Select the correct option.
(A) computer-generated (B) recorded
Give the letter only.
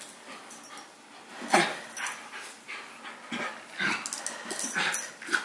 B